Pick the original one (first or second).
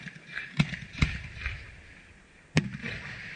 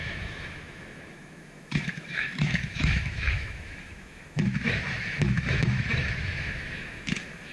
first